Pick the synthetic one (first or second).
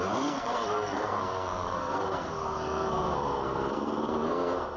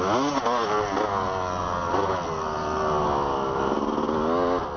first